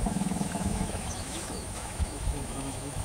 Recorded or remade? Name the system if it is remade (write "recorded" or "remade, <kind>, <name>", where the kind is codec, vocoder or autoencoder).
remade, autoencoder, DAC-VAE